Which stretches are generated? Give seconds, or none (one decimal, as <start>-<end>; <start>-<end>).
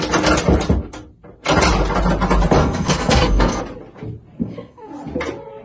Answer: 2.6-3.6; 4.4-4.9